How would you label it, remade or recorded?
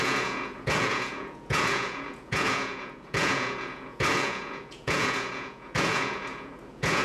remade